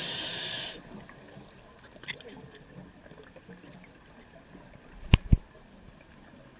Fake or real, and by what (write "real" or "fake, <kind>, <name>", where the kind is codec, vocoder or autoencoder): real